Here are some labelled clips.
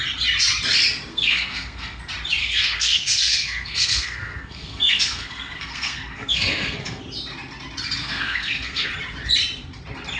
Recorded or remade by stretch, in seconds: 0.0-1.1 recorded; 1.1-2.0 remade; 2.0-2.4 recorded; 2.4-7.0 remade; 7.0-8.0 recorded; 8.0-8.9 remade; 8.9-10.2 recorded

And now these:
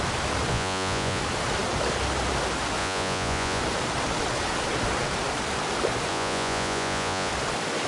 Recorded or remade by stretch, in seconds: 0.0-0.5 recorded; 0.5-1.2 remade; 1.2-2.8 recorded; 2.8-3.6 remade; 3.6-6.1 recorded; 6.1-7.3 remade; 7.3-7.9 recorded